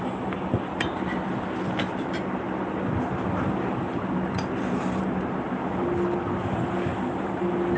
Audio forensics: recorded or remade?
recorded